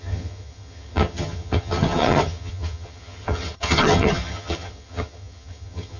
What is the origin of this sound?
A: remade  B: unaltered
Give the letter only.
A